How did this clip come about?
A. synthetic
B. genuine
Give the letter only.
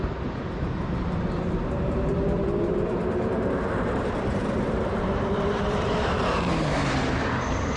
A